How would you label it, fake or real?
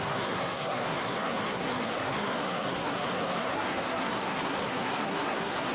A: fake